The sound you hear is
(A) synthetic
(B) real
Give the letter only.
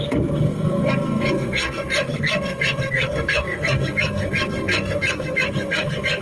A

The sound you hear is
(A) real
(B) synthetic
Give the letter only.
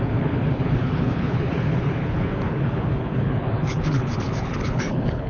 B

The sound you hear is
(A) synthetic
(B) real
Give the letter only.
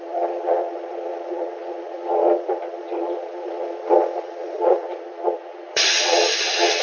A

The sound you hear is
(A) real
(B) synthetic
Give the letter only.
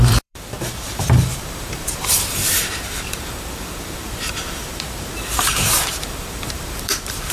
B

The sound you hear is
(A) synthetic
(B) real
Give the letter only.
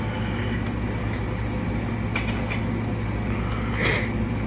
B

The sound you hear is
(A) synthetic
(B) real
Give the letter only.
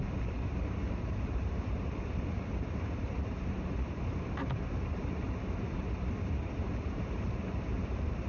A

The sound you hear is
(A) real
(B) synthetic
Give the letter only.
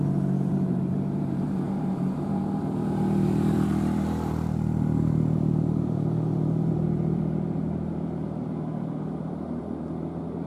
B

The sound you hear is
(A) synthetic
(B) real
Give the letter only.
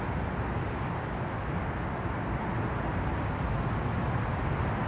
B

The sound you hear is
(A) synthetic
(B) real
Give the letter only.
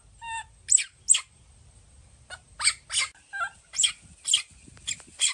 B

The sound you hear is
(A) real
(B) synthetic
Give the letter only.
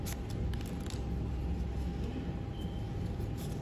A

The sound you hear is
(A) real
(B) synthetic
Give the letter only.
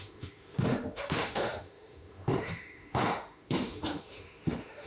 B